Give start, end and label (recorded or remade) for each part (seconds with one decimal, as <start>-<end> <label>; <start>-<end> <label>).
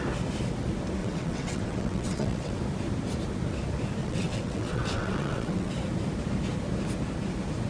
0.0-1.0 recorded; 1.0-2.6 remade; 2.6-4.0 recorded; 4.0-5.7 remade; 5.7-7.7 recorded